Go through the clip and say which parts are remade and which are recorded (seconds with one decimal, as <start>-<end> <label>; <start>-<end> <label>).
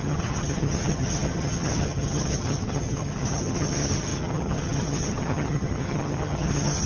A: 0.0-6.9 remade